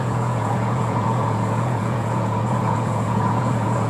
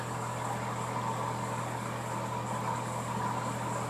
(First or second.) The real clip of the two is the second